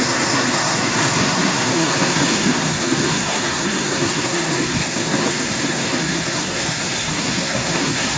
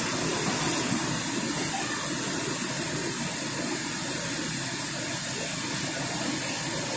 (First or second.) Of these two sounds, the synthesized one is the first